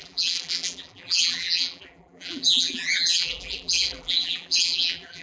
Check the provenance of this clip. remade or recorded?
remade